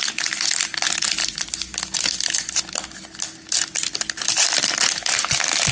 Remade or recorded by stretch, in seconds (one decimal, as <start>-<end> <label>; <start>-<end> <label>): 0.0-5.7 recorded